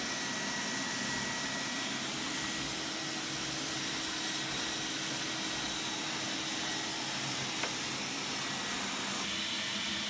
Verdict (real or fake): real